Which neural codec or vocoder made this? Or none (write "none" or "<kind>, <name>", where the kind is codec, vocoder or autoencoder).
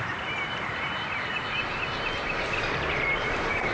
vocoder, BigVGAN v2